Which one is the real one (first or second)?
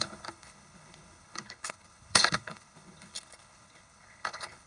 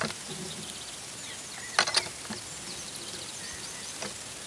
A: second